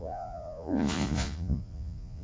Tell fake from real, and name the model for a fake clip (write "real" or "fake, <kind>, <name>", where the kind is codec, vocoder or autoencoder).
fake, vocoder, Vocos